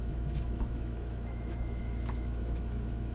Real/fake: fake